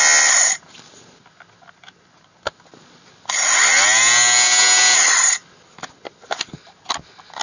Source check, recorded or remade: recorded